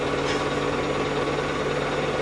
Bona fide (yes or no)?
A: yes